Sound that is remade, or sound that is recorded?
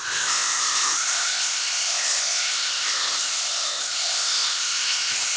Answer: remade